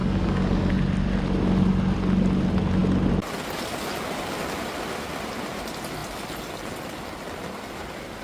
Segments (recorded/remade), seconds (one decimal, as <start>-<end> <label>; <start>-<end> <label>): 0.0-0.7 remade; 0.7-8.2 recorded